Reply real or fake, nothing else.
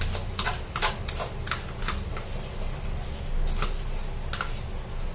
real